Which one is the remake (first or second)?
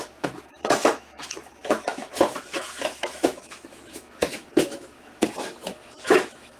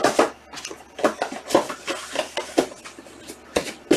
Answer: first